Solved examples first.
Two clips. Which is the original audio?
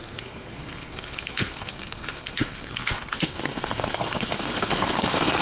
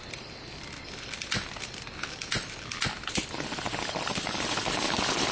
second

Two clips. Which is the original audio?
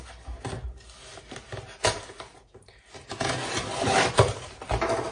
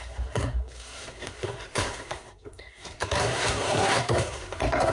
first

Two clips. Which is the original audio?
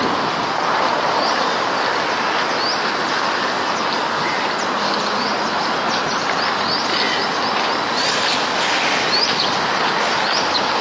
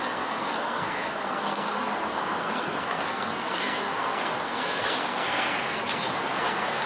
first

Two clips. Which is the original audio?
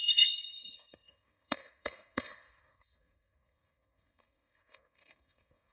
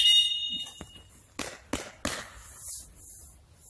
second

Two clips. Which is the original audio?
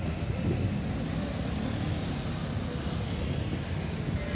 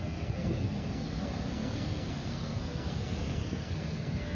first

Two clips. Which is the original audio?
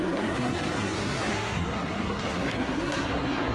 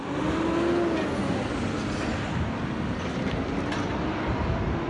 second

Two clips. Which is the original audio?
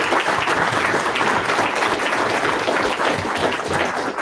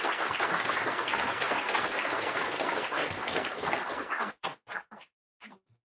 first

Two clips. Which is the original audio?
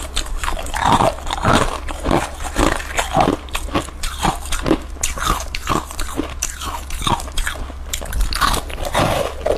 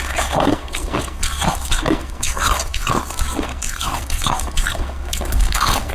first